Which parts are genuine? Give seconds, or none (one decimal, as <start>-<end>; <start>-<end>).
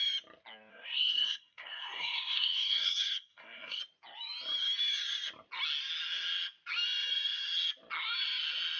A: 0.0-0.7; 3.8-8.8